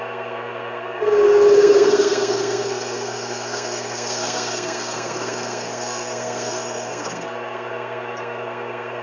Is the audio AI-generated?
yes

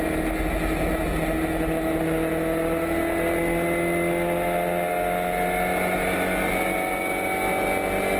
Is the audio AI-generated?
no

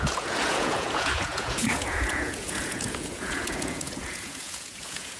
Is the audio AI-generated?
yes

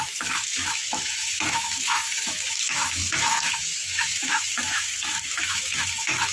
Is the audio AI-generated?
yes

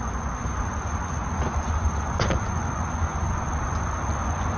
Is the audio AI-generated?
yes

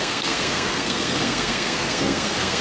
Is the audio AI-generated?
yes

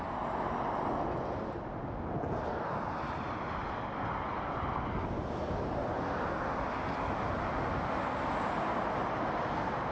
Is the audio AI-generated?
no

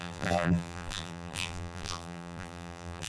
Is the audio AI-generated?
yes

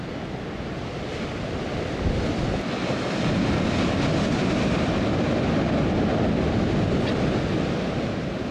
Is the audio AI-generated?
no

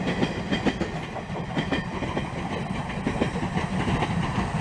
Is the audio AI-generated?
no